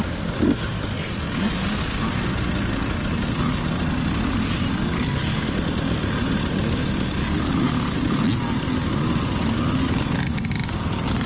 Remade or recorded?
recorded